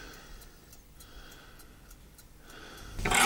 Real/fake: fake